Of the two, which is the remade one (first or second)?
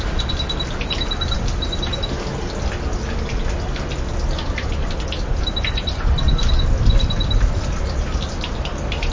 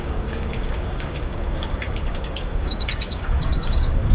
second